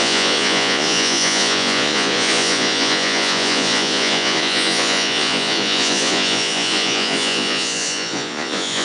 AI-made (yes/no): yes